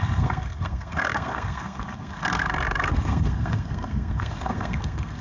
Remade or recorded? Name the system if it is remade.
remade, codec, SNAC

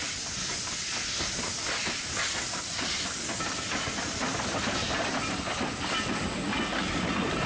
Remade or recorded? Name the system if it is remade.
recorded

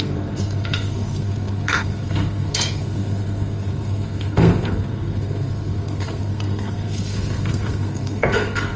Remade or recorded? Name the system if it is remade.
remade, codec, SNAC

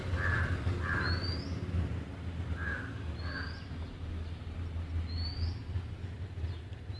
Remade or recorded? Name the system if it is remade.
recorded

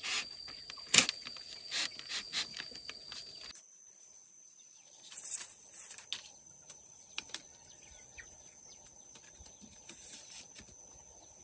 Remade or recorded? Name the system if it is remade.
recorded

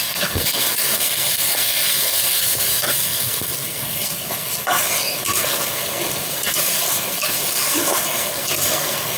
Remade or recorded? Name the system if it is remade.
remade, codec, SNAC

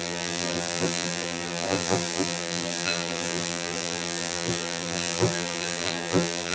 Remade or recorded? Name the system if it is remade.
remade, vocoder, BigVGAN v2